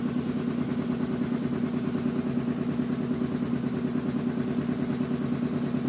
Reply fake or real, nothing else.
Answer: real